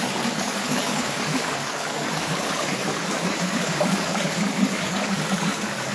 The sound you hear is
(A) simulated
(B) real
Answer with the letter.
A